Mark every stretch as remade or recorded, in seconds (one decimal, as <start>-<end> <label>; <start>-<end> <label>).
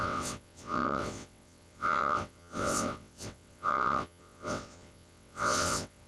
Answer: 0.0-6.1 remade